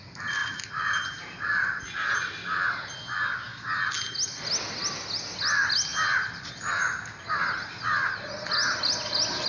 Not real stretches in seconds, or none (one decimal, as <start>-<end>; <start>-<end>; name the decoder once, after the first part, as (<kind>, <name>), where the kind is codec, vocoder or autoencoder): 0.4-2.1 (vocoder, BigVGAN v2)